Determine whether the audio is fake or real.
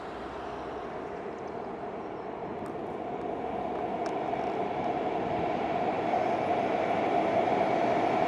fake